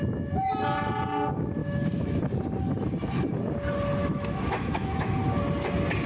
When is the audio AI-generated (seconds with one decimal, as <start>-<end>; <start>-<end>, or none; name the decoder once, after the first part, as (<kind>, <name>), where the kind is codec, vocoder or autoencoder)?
1.6-2.2 (autoencoder, DAC-VAE); 4.0-5.1